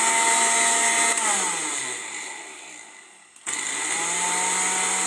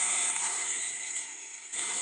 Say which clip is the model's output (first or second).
second